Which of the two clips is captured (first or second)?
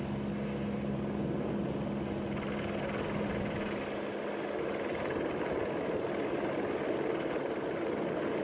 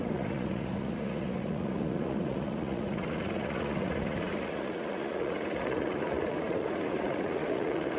first